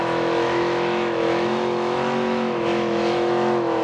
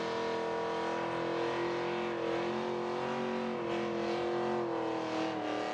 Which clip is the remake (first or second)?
first